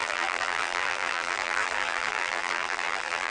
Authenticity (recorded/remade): remade